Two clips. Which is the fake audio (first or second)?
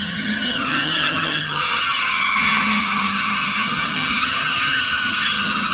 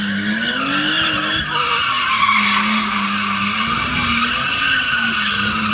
first